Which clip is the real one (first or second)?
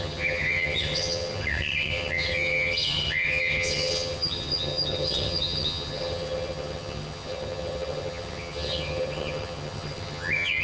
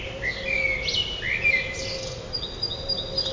second